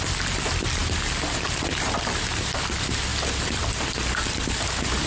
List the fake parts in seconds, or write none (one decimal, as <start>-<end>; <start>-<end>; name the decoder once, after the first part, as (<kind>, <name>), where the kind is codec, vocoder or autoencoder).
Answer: none

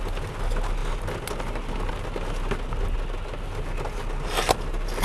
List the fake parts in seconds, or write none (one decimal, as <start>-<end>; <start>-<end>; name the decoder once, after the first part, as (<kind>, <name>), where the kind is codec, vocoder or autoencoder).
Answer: none

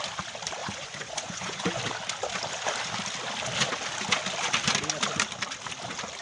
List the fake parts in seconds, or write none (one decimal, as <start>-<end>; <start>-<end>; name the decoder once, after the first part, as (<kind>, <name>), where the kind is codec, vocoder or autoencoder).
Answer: 0.6-1.8 (vocoder, Vocos)

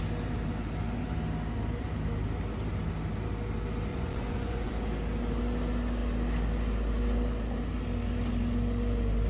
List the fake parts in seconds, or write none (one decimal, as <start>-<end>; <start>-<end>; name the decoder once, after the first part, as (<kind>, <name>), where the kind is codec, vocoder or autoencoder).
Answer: 3.9-4.7 (vocoder, Vocos)